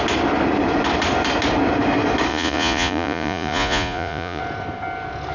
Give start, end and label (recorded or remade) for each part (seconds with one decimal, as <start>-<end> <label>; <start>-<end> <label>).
0.0-2.3 recorded; 2.3-4.4 remade; 4.4-5.3 recorded

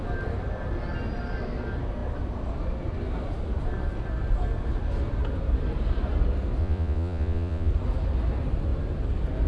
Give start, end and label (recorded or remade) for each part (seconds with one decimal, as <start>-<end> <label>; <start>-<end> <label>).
0.0-6.6 recorded; 6.6-7.7 remade; 7.7-9.5 recorded

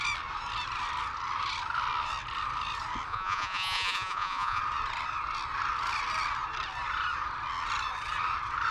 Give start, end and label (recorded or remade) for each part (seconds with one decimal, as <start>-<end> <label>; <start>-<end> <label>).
0.0-3.1 recorded; 3.1-4.6 remade; 4.6-8.7 recorded